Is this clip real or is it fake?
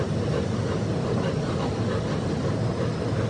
real